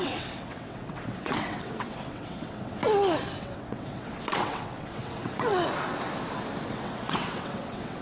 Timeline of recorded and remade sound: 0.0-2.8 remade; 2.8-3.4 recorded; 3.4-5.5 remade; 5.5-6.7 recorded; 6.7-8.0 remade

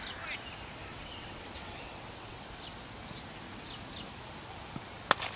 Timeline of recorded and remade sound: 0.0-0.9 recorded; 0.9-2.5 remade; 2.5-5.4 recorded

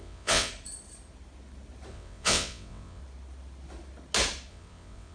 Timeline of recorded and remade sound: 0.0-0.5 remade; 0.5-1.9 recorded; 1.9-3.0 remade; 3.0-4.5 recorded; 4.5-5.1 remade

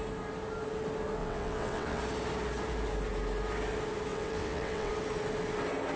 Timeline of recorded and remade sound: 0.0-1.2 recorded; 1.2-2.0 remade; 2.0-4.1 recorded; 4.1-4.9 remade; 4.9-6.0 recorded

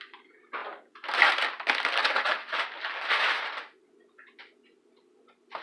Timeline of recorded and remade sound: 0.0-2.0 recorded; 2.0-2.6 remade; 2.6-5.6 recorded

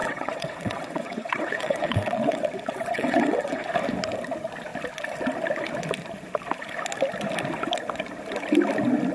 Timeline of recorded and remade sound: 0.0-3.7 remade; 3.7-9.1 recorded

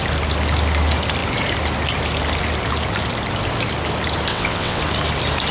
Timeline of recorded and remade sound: 0.0-4.3 recorded; 4.3-4.8 remade; 4.8-5.5 recorded